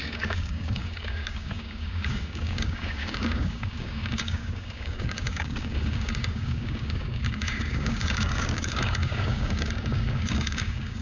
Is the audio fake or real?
fake